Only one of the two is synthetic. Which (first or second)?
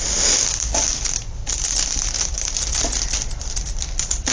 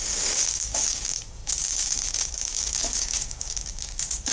second